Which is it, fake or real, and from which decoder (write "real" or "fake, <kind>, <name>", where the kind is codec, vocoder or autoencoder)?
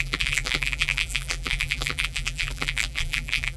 fake, vocoder, BigVGAN v2